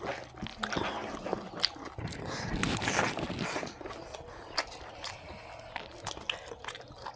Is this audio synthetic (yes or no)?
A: no